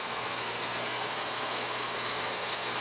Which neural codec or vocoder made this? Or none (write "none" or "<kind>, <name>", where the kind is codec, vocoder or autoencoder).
codec, SNAC